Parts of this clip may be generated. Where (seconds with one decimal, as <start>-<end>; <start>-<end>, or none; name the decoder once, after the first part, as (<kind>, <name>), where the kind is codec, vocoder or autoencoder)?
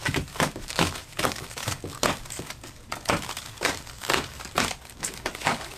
0.0-5.8 (codec, DAC)